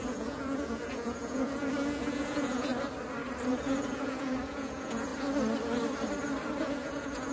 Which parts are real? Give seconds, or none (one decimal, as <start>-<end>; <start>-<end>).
2.7-3.5; 5.1-6.6